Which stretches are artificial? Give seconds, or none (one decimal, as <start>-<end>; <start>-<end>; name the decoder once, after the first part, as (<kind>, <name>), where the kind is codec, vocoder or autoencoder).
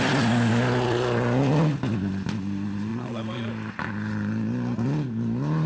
2.9-3.5 (vocoder, Vocos)